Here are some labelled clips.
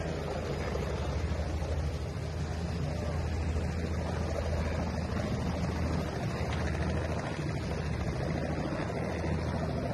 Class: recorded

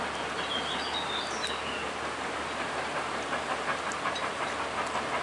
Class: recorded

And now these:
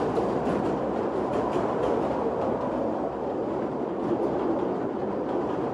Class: recorded